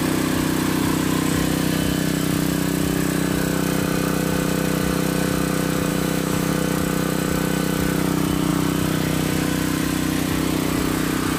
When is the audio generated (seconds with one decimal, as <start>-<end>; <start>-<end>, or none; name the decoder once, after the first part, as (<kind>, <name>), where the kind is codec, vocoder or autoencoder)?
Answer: 5.9-6.5 (autoencoder, DAC-VAE)